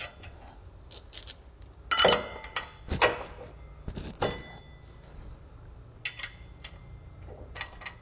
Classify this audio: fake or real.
real